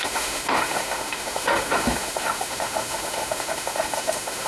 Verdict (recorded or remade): remade